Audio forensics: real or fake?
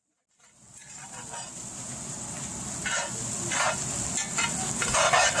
real